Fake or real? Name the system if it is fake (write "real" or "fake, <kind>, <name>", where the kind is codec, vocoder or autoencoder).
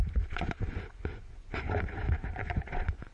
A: fake, vocoder, Vocos